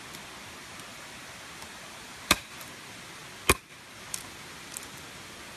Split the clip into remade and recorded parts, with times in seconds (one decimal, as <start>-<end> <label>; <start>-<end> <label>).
0.0-0.9 recorded; 0.9-2.7 remade; 2.7-5.6 recorded